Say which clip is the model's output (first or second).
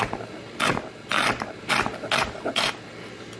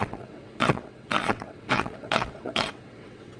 second